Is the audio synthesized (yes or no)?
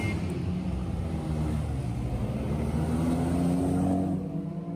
no